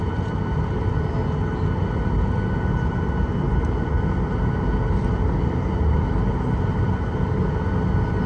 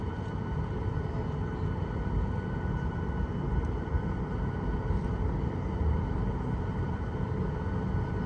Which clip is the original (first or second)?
first